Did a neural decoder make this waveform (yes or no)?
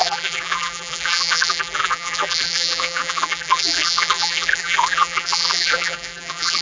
yes